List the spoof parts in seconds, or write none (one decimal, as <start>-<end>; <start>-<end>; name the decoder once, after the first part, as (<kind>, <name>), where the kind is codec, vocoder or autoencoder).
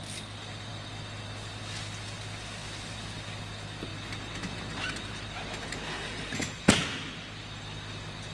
none